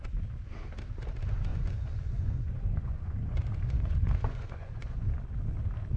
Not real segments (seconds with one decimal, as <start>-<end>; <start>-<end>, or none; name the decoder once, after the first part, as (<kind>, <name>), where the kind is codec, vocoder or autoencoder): 1.5-5.1 (vocoder, Vocos)